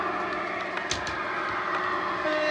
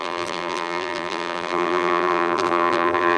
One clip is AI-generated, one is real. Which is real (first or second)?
first